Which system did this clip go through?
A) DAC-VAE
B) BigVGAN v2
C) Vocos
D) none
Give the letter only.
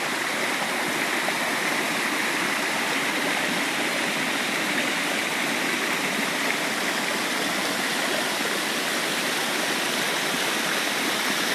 D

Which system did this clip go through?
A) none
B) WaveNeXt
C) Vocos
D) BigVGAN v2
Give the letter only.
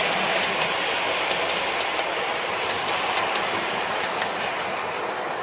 A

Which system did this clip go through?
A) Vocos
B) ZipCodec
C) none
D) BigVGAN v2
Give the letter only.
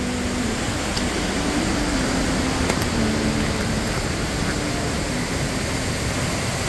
C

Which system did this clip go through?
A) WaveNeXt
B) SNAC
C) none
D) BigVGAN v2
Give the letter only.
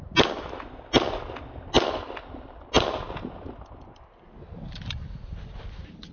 C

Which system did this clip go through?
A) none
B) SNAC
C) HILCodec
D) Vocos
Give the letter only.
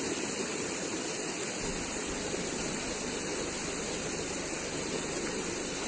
A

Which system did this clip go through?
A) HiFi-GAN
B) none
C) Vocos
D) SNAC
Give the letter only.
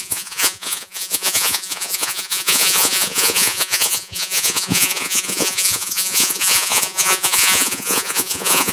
C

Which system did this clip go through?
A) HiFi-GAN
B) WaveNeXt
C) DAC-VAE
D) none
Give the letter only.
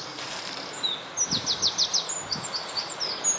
D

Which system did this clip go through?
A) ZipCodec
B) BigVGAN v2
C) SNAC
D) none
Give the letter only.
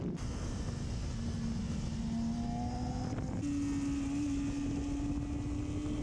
D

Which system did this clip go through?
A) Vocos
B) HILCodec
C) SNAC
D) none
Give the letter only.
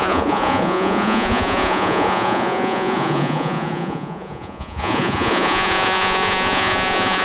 A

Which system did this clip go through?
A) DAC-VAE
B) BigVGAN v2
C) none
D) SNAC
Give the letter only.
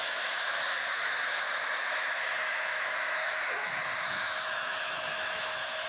A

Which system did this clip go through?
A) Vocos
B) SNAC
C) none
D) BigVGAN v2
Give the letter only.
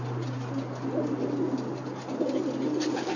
C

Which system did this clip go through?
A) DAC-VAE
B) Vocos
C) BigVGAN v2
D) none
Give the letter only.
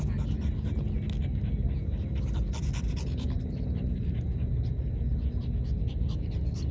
D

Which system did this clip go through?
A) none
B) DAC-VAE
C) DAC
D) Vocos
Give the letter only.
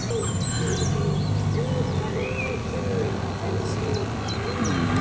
A